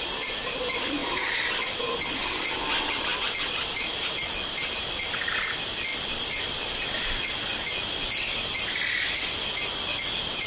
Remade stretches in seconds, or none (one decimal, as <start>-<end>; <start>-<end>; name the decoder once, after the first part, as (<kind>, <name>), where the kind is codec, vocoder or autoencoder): 1.0-1.8 (vocoder, BigVGAN v2); 3.1-4.1